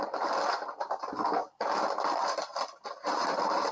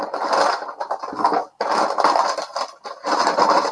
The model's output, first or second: first